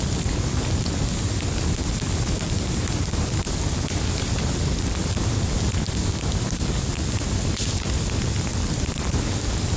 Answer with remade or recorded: recorded